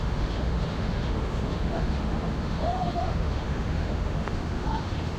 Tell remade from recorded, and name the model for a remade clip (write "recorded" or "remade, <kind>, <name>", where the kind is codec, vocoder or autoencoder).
remade, autoencoder, DAC-VAE